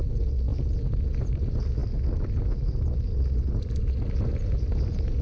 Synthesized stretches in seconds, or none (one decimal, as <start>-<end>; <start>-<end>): none